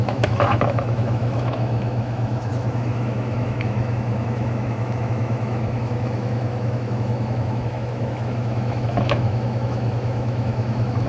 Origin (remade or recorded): remade